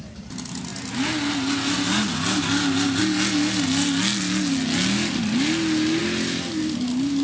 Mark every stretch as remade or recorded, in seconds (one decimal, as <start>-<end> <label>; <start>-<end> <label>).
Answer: 0.0-7.2 recorded